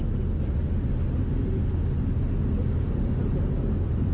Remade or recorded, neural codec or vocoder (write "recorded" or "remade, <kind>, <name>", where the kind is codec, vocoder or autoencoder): recorded